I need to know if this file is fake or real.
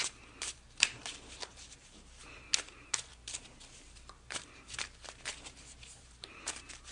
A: fake